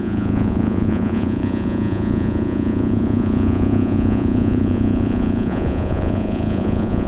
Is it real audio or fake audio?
fake